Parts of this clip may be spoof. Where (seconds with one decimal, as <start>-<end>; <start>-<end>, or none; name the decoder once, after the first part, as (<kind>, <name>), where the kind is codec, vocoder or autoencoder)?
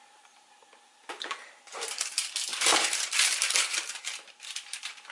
0.0-0.6 (vocoder, BigVGAN v2); 1.6-5.1